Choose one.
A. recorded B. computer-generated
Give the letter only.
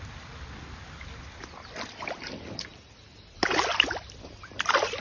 A